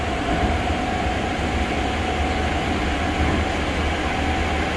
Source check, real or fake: real